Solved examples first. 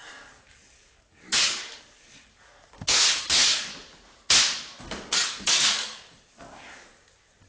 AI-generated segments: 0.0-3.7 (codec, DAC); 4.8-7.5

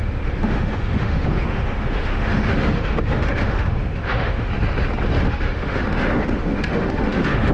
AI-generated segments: 0.0-4.5 (autoencoder, DAC-VAE); 5.2-7.5

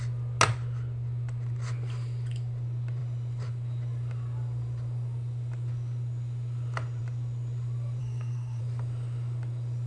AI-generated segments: 8.0-8.6 (codec, SNAC)

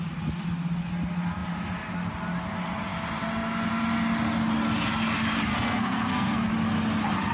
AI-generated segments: 5.5-6.5 (codec, SNAC)

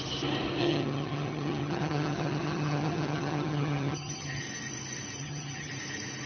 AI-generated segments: 0.6-4.4 (vocoder, HiFi-GAN); 5.2-5.7